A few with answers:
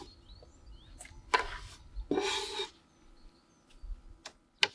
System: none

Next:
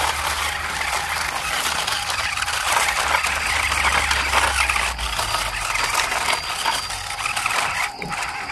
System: none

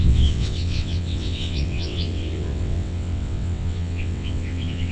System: vocoder, WaveNeXt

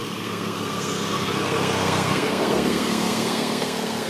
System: codec, SNAC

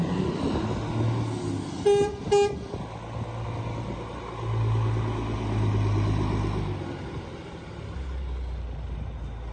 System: none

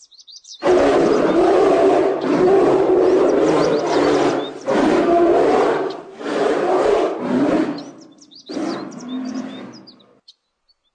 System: none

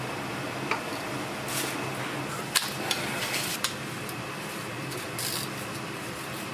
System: none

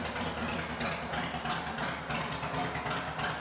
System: none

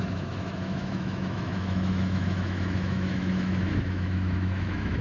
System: autoencoder, DAC-VAE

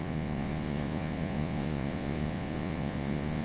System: vocoder, Vocos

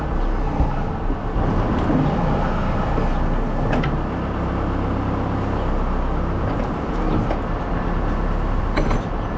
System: none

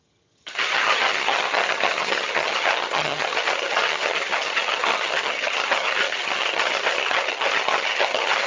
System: vocoder, HiFi-GAN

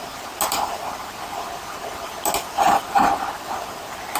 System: none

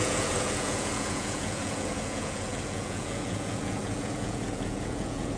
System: vocoder, Vocos